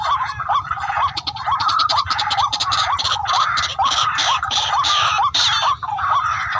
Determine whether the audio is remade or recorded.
remade